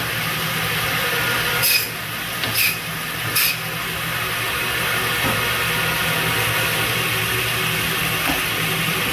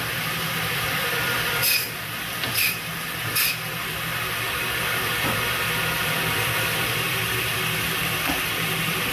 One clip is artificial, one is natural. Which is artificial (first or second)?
second